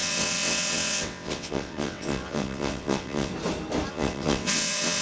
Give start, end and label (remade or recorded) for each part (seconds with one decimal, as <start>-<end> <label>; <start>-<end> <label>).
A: 0.0-3.3 remade; 3.3-3.9 recorded; 3.9-5.0 remade